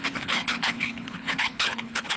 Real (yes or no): no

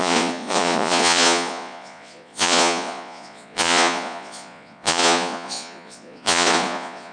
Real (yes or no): no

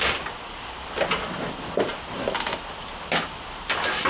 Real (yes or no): yes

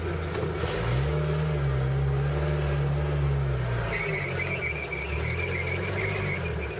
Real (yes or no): yes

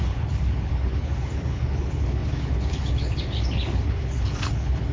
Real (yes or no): no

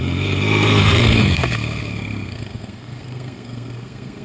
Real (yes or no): no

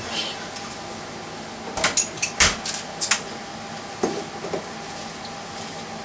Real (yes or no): yes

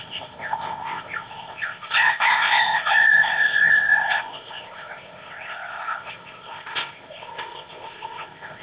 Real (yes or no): no